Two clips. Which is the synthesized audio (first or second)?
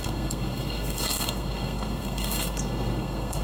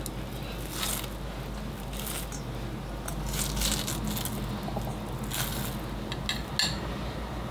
first